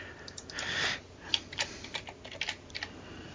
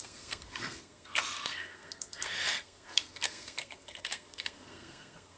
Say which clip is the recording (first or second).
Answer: first